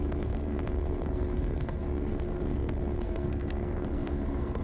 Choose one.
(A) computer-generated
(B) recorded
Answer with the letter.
A